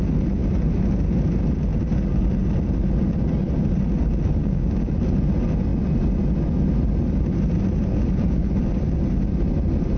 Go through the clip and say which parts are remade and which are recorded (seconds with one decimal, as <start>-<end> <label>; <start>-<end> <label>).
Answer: 0.0-4.4 recorded; 4.4-4.9 remade; 4.9-10.0 recorded